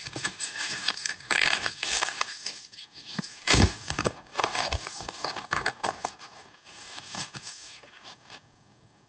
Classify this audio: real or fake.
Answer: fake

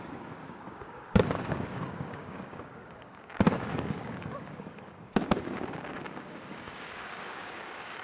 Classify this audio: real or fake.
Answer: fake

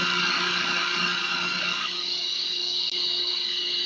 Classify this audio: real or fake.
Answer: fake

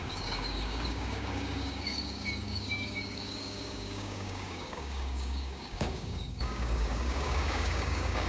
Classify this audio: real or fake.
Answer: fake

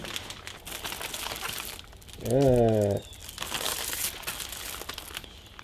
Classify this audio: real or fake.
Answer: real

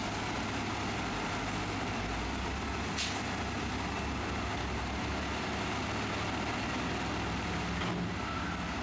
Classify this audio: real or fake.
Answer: real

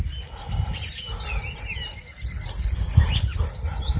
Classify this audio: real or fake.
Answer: real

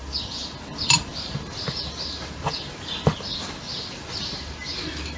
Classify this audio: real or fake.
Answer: real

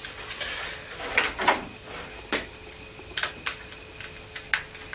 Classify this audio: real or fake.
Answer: real